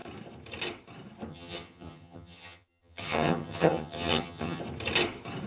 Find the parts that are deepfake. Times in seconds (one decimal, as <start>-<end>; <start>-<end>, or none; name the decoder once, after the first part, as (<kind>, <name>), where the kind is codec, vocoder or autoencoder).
1.3-4.6 (vocoder, HiFi-GAN)